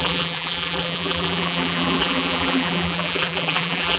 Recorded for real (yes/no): no